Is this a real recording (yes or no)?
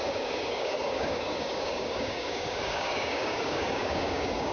no